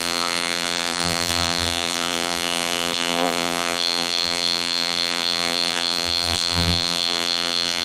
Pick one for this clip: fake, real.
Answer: fake